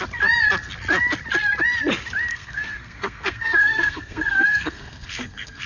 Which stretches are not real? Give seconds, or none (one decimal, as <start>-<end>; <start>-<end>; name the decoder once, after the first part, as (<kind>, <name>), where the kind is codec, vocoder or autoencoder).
2.3-5.7 (codec, SNAC)

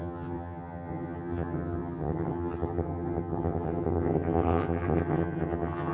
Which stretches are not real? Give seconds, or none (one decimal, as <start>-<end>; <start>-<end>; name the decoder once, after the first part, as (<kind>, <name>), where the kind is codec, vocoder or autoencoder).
0.0-5.9 (vocoder, HiFi-GAN)

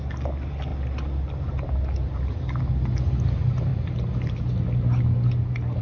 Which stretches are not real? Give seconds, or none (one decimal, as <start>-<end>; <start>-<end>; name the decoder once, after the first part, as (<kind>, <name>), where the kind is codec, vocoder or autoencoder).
none

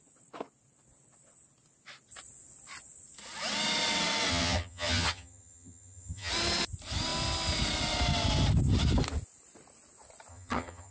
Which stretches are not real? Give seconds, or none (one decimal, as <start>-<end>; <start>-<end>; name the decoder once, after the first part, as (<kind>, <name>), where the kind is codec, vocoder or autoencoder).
4.3-6.3 (vocoder, HiFi-GAN); 10.3-10.9